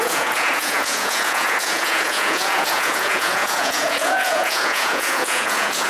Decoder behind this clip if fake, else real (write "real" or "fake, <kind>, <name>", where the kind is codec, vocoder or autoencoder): fake, vocoder, Vocos